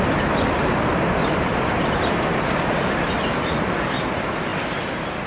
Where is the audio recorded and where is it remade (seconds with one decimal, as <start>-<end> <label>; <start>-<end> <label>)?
0.0-5.3 recorded